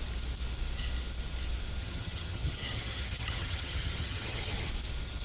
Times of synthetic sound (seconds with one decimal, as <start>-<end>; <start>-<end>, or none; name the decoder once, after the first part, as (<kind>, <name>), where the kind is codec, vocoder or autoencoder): 1.8-4.7 (vocoder, HiFi-GAN)